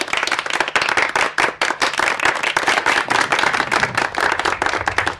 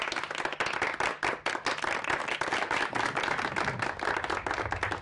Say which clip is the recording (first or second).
second